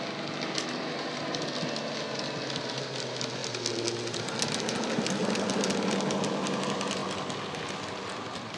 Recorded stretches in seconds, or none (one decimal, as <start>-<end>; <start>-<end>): 0.0-8.6

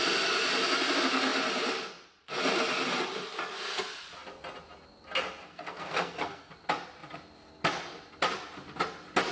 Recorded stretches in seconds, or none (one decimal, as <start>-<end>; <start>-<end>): 0.0-5.4; 6.5-9.3

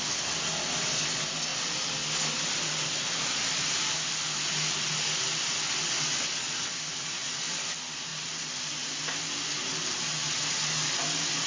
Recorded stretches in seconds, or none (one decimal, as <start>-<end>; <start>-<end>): 0.0-11.5

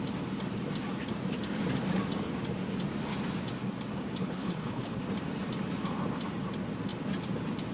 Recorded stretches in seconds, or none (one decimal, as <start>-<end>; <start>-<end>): 0.0-4.2; 5.0-7.7

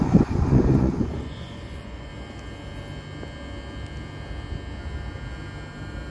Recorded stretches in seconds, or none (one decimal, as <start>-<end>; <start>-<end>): 2.1-6.1

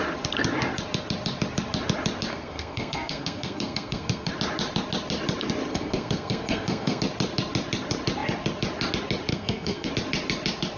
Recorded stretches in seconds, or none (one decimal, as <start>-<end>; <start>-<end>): 0.0-2.3; 4.3-5.7; 7.0-9.3; 9.9-10.8

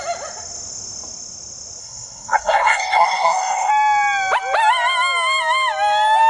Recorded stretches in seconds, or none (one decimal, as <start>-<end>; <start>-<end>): 0.0-1.8; 3.7-6.3